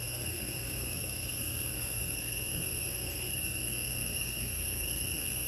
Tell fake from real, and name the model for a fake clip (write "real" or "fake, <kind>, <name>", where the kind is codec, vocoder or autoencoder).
fake, codec, SNAC